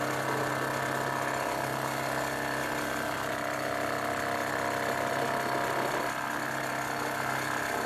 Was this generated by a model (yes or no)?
no